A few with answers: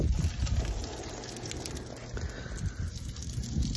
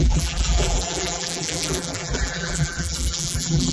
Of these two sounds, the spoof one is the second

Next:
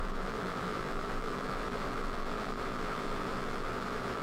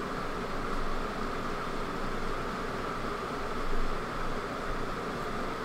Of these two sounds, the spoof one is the first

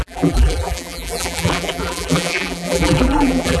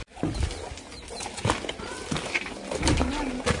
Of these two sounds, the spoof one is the first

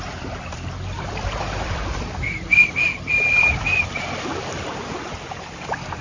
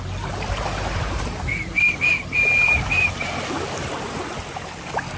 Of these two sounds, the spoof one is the first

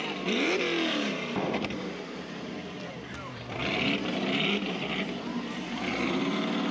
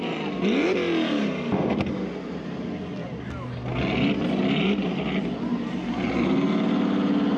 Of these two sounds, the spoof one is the first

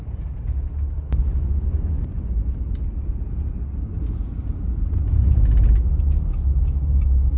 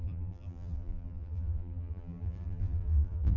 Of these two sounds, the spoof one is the second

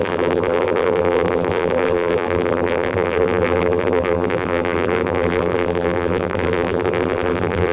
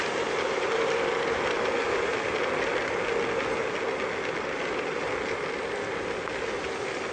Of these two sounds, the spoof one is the first